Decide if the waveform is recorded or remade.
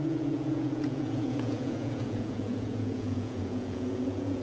remade